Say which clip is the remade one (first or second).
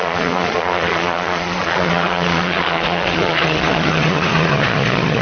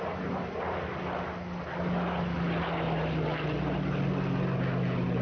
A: first